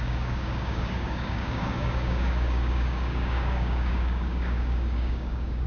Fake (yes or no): yes